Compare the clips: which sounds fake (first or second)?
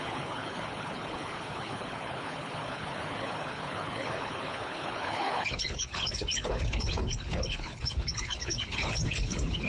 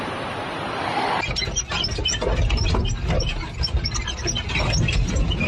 first